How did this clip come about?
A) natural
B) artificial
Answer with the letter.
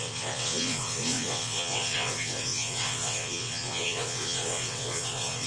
B